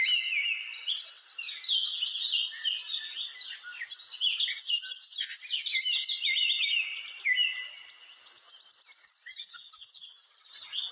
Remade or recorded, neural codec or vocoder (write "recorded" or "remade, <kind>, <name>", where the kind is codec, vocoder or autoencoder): recorded